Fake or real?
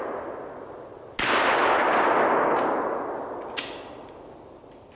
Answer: real